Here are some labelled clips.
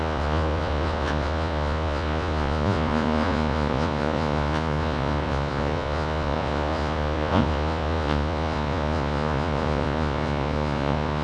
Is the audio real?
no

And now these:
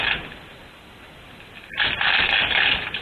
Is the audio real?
yes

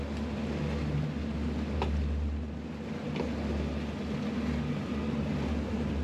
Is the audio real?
yes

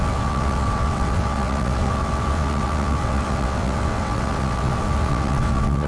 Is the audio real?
no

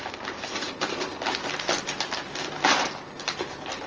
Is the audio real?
yes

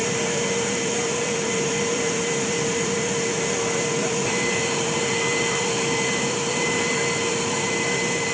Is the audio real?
no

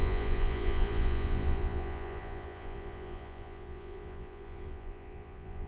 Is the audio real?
no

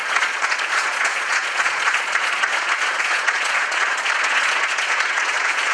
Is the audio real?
no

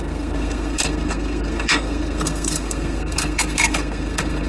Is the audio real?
no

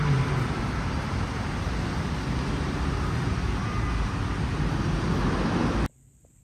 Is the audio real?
yes